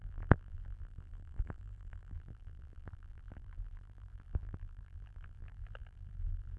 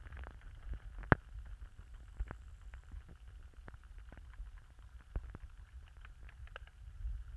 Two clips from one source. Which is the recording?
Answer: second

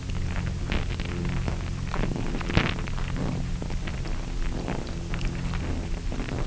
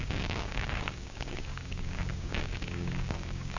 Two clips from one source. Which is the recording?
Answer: first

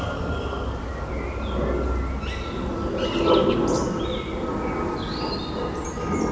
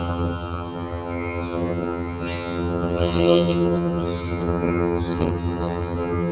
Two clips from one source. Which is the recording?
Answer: first